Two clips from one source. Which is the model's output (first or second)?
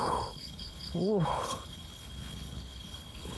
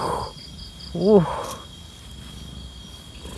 first